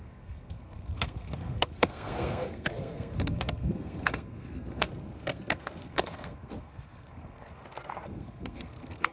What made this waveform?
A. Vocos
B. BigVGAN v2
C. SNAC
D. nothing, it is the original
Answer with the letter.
C